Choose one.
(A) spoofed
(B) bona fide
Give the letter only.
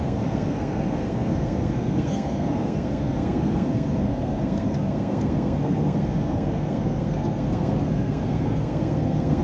A